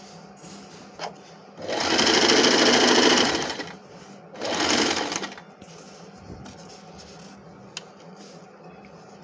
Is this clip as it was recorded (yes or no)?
yes